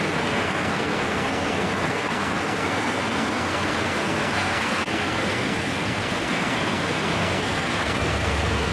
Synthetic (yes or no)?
yes